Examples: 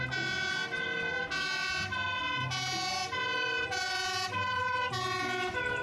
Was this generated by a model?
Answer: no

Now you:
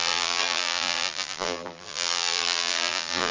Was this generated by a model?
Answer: yes